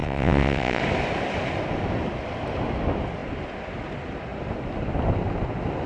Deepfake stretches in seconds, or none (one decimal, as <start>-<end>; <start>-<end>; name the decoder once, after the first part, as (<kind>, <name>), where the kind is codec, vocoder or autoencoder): 0.0-0.8 (vocoder, WaveNeXt)